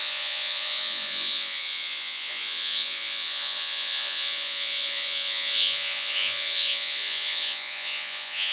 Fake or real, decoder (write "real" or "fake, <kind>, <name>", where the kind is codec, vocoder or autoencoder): fake, vocoder, Vocos